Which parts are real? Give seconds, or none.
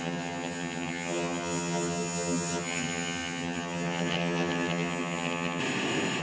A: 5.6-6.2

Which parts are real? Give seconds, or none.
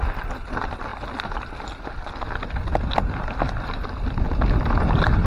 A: 0.0-5.3